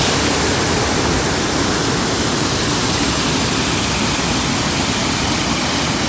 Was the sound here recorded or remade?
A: recorded